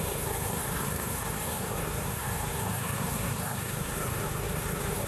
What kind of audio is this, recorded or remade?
remade